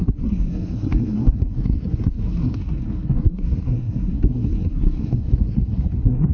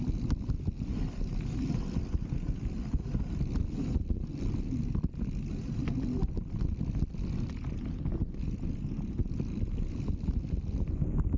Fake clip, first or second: first